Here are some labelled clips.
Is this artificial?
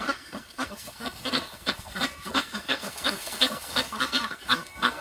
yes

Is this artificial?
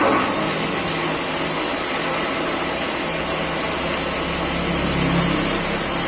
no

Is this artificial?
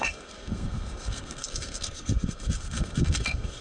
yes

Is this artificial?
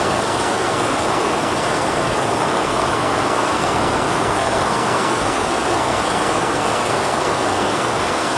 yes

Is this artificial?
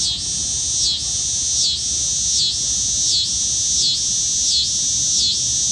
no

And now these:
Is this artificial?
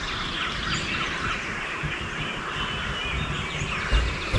no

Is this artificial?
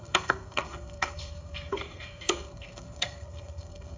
yes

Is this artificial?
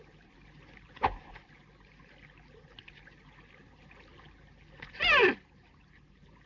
no